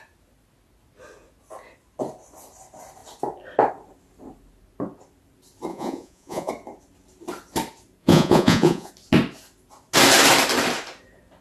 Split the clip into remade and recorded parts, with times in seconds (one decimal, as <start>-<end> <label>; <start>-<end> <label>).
0.0-5.7 recorded; 5.7-6.5 remade; 6.5-8.0 recorded; 8.0-8.9 remade; 8.9-11.4 recorded